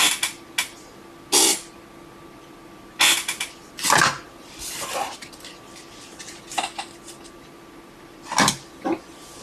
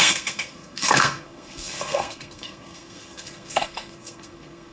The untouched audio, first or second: first